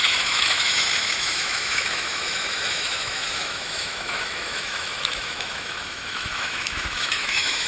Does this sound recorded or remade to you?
remade